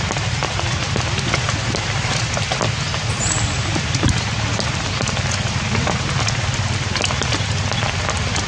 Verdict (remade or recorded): recorded